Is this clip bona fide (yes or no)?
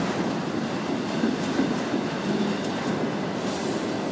yes